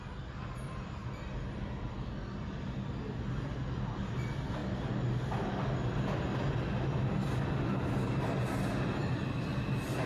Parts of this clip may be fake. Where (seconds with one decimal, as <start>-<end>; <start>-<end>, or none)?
none